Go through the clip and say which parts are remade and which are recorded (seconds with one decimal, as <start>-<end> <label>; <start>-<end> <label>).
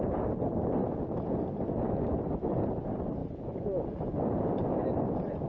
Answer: 0.0-5.5 recorded